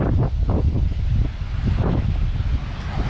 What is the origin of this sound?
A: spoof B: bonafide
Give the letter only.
B